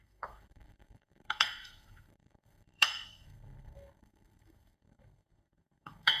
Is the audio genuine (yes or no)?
no